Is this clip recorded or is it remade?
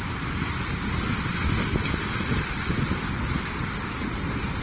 recorded